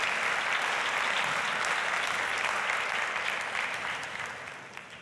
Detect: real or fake real